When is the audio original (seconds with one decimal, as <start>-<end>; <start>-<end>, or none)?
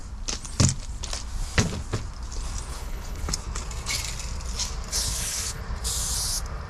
0.0-2.7; 3.3-4.9; 5.6-6.7